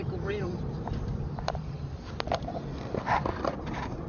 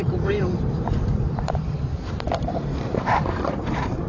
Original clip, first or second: first